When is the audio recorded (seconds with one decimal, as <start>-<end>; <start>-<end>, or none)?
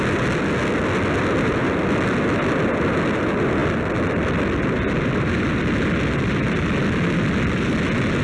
0.0-8.2